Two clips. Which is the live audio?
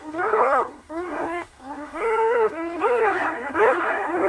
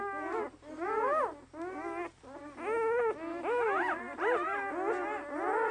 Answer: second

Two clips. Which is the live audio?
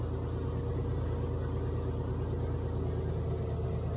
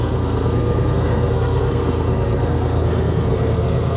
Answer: first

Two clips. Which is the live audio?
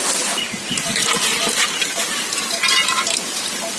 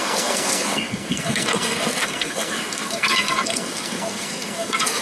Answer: first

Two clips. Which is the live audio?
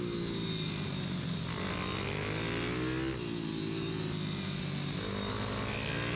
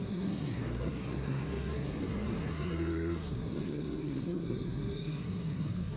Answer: first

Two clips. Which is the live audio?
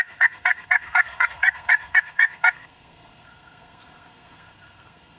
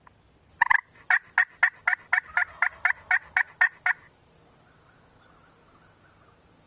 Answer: second